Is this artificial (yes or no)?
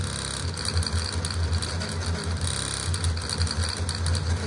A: no